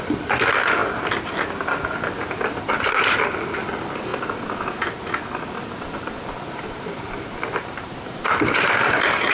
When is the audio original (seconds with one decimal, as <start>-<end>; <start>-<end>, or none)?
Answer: 0.0-4.1; 4.8-5.6